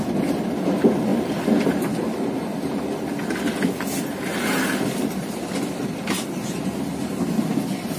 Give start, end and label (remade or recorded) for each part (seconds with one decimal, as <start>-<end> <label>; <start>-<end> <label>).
0.0-8.0 recorded